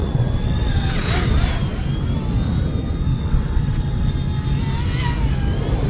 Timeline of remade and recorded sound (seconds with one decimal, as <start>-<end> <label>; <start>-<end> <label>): 0.0-1.3 remade; 1.3-3.1 recorded; 3.1-4.1 remade; 4.1-5.9 recorded